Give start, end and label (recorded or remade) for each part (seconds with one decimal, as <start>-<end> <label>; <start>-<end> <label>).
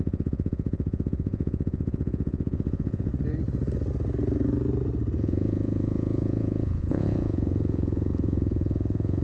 0.0-3.1 remade; 3.1-5.2 recorded; 5.2-9.2 remade